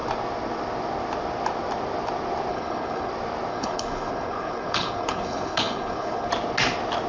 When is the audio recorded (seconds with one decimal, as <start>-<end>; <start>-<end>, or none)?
0.0-2.5; 3.1-3.5; 6.3-7.1